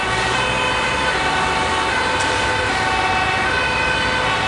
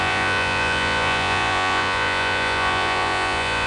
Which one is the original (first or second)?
first